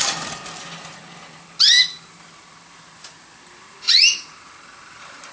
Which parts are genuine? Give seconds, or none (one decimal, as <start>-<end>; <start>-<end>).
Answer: none